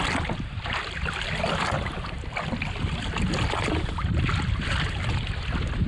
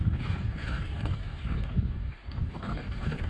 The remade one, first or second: second